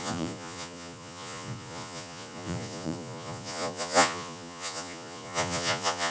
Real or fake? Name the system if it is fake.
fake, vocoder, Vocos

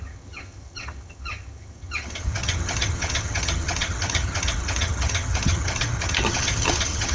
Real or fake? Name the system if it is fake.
fake, vocoder, HiFi-GAN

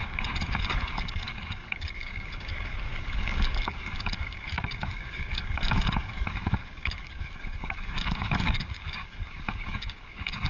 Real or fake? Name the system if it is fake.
fake, codec, DAC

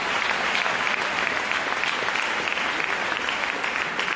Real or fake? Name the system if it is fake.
real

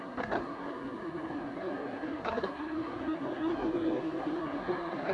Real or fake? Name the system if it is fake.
fake, codec, SNAC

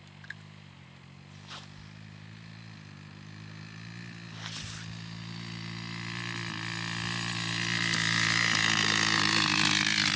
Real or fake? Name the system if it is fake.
real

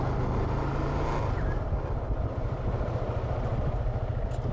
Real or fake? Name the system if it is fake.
real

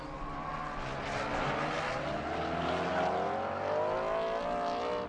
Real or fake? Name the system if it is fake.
real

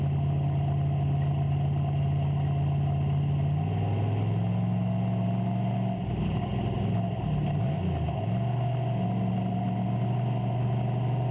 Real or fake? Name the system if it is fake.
real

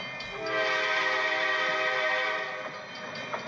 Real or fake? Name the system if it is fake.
real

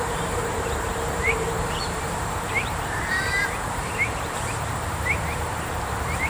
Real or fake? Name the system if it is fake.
fake, vocoder, BigVGAN v2